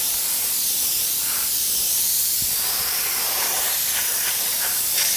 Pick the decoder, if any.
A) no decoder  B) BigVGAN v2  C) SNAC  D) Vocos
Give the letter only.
B